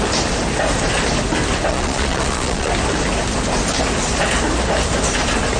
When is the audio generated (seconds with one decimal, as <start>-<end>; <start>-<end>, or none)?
1.7-2.7